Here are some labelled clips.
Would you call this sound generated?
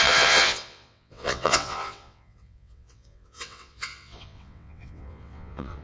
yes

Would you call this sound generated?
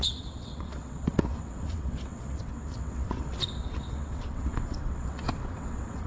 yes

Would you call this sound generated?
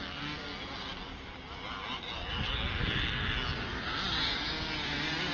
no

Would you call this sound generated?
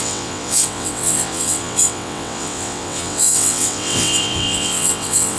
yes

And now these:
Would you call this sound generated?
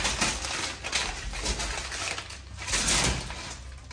no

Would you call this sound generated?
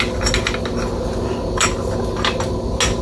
no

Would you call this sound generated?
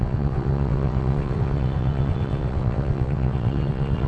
yes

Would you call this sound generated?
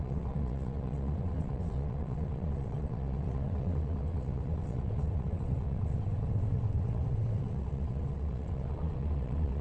yes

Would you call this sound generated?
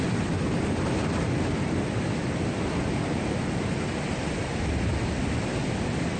no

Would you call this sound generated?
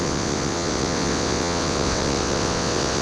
yes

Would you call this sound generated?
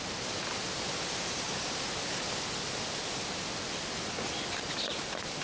no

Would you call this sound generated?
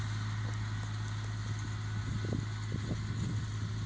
no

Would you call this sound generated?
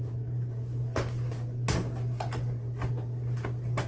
no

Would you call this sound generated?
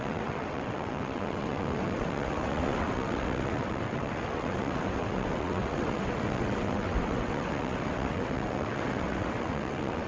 yes